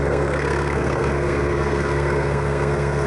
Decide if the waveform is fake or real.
fake